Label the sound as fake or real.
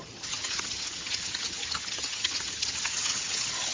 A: fake